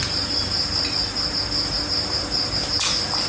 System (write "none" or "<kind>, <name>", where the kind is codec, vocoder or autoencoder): vocoder, BigVGAN v2